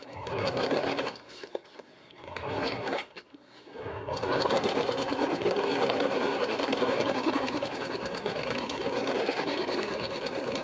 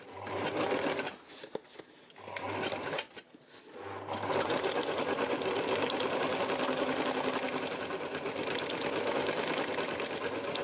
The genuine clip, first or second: second